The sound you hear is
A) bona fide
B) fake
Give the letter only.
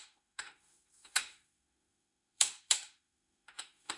B